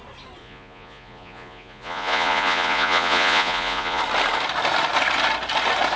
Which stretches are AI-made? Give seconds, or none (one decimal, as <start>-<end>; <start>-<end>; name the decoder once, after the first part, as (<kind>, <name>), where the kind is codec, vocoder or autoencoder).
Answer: 0.4-4.0 (vocoder, Vocos)